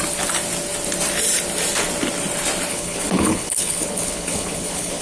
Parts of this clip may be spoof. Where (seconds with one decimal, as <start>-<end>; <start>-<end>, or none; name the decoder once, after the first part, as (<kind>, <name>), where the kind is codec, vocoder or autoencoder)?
2.7-5.0 (codec, HILCodec)